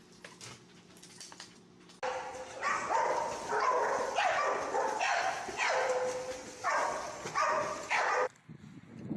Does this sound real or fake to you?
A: real